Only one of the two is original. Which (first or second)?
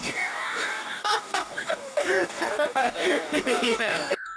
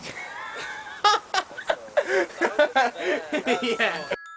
second